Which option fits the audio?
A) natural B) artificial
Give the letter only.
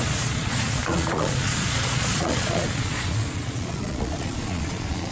B